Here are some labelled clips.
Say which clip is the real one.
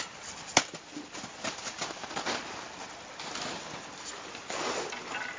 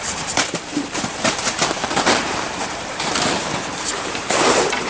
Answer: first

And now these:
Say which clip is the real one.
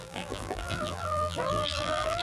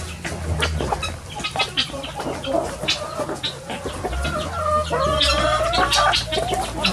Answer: second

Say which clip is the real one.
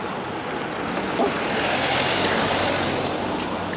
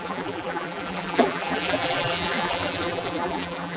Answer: first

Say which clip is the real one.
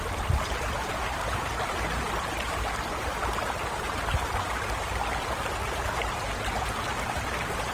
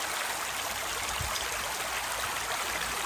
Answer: second